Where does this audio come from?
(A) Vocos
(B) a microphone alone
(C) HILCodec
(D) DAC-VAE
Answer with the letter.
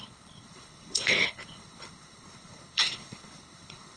C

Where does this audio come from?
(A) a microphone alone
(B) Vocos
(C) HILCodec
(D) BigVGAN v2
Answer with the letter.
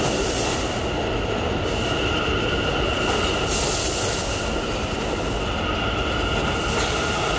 A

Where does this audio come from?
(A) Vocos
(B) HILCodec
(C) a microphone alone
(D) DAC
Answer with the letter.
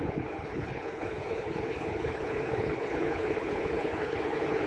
B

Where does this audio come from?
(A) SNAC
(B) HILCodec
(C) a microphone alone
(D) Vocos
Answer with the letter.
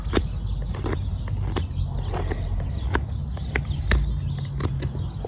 C